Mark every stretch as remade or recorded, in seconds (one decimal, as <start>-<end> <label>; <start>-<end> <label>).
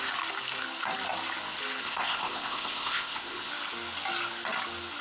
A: 0.0-1.8 recorded; 1.8-3.5 remade; 3.5-5.0 recorded